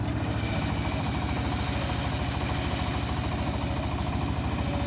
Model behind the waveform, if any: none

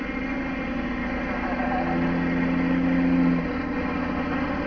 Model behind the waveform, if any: none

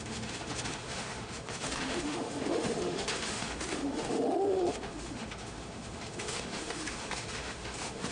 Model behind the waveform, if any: autoencoder, DAC-VAE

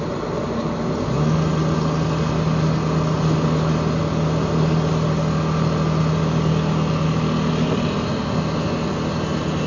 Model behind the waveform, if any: none